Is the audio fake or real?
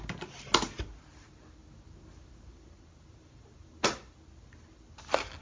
real